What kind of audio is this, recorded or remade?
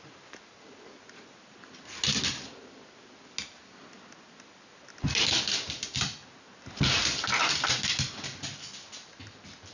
recorded